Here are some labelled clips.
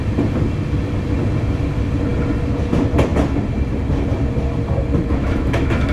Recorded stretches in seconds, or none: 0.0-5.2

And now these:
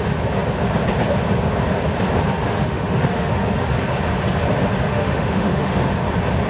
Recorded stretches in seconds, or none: 0.0-2.5; 3.3-4.9; 5.9-6.5

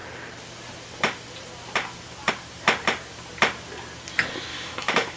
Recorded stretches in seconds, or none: 0.0-4.5

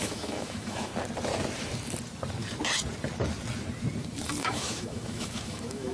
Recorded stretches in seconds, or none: 0.9-4.4

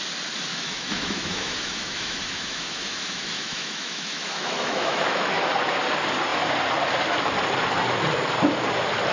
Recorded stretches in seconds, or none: 0.0-0.5; 5.3-9.1